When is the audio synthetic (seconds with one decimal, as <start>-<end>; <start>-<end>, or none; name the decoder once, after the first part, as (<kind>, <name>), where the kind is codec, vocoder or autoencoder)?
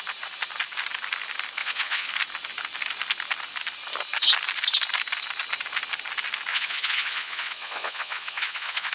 1.6-2.1 (vocoder, Vocos); 6.5-8.9